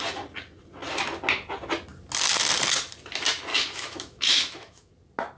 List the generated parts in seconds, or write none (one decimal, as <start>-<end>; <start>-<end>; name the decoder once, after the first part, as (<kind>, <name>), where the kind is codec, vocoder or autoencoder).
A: 3.5-4.9 (autoencoder, DAC-VAE)